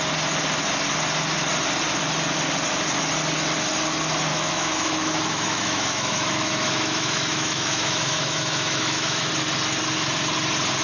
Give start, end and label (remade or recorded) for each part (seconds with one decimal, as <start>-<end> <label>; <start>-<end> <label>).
0.0-4.3 recorded; 4.3-9.3 remade; 9.3-10.8 recorded